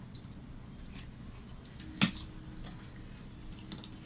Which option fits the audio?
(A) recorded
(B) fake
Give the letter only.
A